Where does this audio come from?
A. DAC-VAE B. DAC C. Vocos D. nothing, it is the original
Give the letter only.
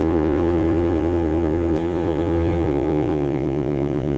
C